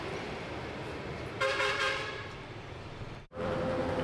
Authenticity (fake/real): fake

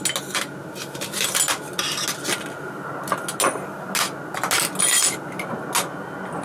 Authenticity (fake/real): real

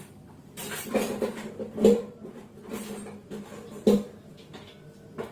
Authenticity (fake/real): real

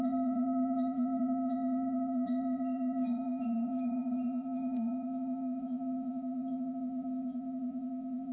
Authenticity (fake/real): fake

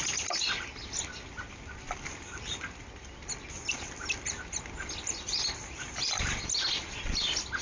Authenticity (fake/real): real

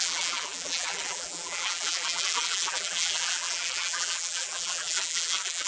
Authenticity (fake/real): fake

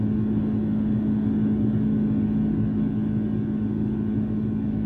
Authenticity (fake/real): fake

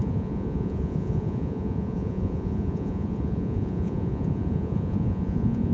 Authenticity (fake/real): fake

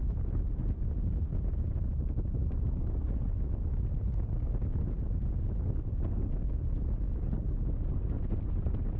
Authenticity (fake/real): real